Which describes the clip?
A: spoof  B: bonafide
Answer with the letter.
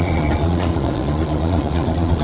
A